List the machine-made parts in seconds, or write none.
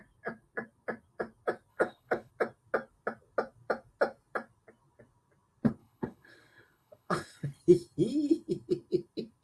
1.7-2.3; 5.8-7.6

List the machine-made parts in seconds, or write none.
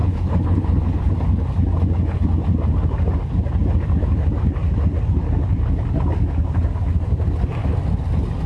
0.0-1.1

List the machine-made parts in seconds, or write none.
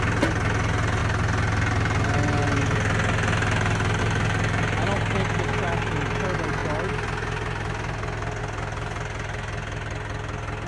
none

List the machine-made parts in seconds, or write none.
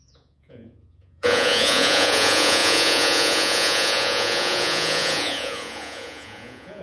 0.0-6.8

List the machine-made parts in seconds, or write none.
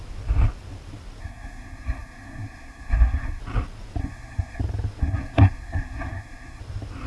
1.2-3.4; 4.0-4.6; 5.0-6.6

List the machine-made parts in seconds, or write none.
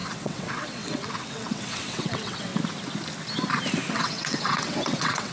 0.0-2.5; 3.9-5.3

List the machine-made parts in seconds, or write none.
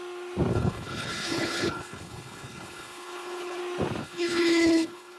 0.5-3.6; 4.0-5.2